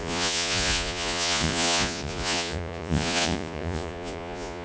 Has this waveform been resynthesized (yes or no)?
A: yes